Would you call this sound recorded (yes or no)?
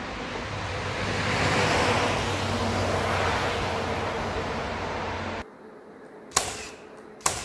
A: yes